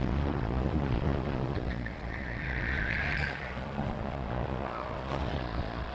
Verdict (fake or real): fake